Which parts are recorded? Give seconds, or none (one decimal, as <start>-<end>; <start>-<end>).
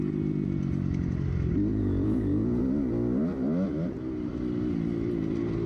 0.0-1.7; 2.6-5.7